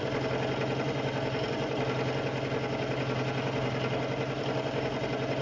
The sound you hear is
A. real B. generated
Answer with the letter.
A